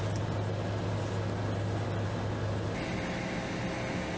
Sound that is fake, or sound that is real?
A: real